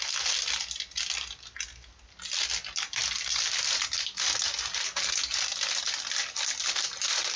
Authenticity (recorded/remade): recorded